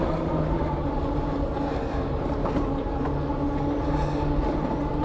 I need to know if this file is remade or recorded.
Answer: recorded